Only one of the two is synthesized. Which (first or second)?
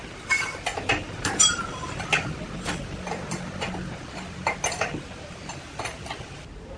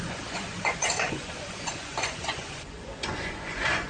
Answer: second